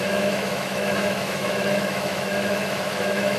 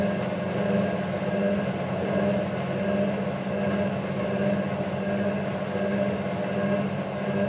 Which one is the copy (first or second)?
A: first